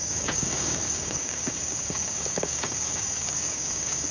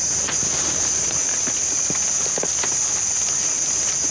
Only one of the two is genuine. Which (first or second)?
second